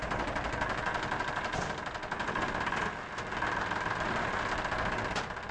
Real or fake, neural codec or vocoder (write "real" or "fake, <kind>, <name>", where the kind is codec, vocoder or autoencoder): real